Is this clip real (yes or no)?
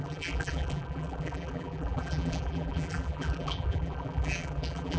no